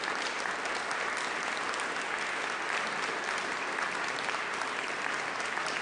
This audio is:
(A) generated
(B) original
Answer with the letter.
B